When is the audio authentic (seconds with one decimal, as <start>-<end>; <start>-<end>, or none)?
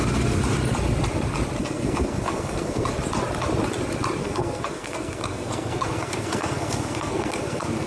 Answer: 0.0-1.6; 2.9-4.2